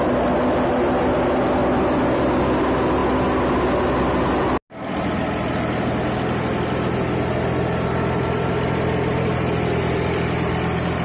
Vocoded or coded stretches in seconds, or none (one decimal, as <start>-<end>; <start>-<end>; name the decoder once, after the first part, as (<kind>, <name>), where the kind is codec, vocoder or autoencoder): 1.6-2.6 (vocoder, BigVGAN v2)